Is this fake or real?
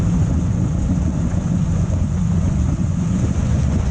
fake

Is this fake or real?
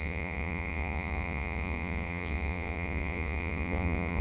fake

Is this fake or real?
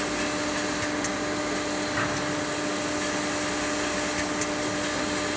real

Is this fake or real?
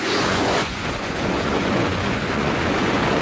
fake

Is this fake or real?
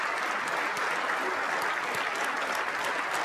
real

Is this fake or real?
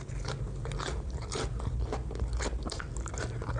real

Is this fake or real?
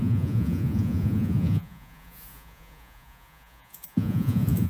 fake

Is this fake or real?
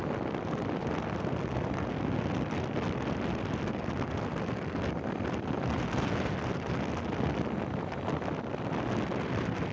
real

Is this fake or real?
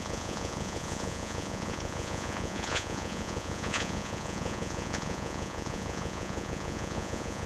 fake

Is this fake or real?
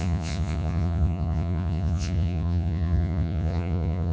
fake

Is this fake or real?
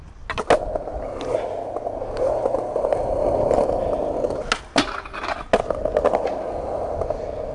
real